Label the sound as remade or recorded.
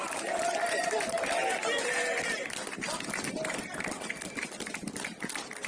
recorded